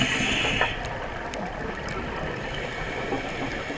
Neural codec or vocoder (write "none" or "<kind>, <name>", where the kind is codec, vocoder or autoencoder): none